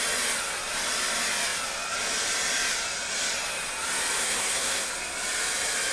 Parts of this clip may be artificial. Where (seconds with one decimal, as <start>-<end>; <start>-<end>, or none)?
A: 4.2-4.9